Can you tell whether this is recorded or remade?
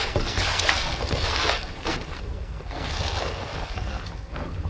remade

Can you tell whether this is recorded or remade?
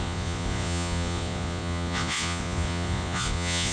remade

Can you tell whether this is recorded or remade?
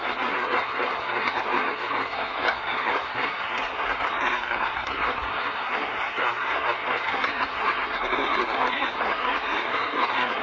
remade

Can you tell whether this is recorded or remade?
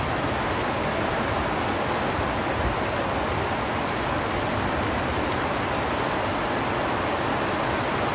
recorded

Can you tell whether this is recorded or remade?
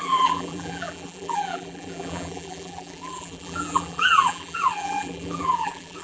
remade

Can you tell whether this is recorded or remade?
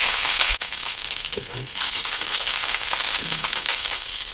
remade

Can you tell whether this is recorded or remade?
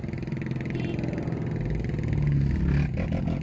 recorded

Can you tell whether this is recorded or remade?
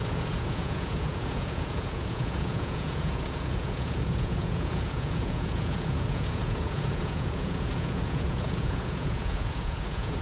remade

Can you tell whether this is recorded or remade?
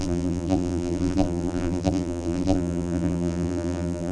remade